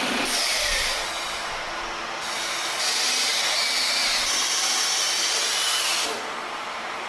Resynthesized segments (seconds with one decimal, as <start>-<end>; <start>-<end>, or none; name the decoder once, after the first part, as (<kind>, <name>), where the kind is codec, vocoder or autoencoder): 0.0-2.2 (vocoder, BigVGAN v2); 2.8-3.3